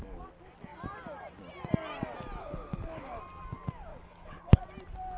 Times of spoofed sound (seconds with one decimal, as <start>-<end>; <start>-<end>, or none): 2.4-3.2; 3.9-4.6